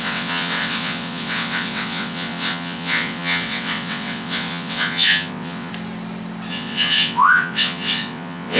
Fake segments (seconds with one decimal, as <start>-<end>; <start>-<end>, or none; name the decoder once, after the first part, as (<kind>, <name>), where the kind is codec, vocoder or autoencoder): 0.0-5.7 (vocoder, WaveNeXt); 6.5-8.6